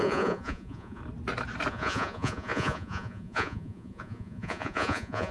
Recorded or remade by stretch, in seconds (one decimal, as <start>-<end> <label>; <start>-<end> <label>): 0.0-1.0 remade; 1.0-1.7 recorded; 1.7-5.3 remade